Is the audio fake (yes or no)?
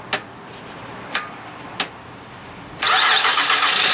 no